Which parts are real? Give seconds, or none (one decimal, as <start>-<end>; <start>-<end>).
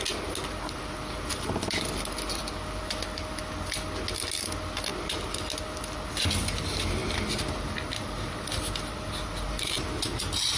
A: 0.0-4.9; 5.4-10.6